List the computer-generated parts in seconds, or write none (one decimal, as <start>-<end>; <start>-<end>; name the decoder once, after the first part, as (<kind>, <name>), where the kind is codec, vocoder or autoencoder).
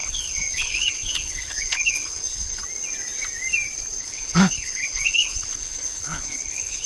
0.0-2.6 (codec, HILCodec); 4.0-6.9